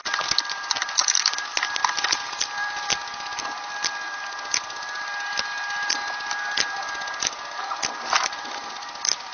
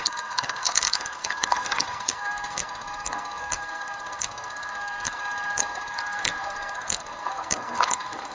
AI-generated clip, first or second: second